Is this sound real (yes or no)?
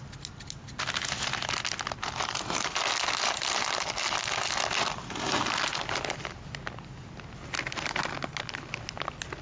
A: yes